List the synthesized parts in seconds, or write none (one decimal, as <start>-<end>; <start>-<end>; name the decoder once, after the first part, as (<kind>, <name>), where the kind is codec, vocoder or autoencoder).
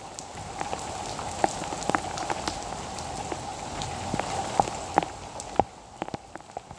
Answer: none